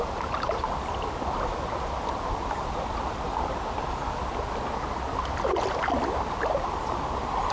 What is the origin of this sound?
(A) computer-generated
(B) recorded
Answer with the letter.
B